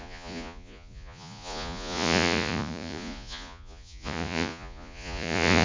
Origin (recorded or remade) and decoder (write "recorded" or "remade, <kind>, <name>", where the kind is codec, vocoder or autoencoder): remade, vocoder, Vocos